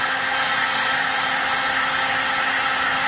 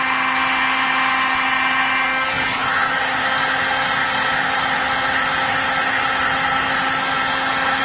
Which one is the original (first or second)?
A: second